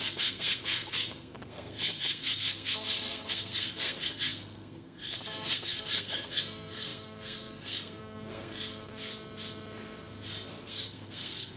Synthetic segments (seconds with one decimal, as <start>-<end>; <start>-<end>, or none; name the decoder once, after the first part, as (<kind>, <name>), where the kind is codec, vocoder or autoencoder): 0.0-9.1 (codec, SNAC); 10.6-11.6